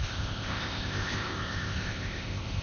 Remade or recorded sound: remade